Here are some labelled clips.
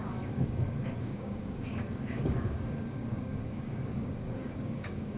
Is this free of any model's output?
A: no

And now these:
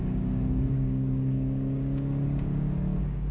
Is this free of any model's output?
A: no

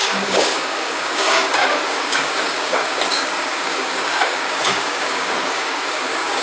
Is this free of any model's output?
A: no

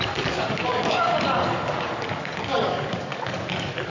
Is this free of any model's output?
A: no